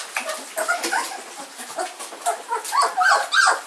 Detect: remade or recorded recorded